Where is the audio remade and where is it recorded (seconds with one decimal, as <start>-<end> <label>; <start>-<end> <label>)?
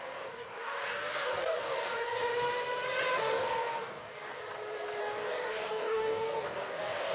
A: 0.0-2.3 remade; 2.3-3.2 recorded; 3.2-4.4 remade; 4.4-5.0 recorded; 5.0-7.1 remade